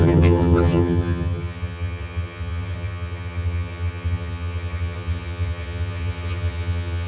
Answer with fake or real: fake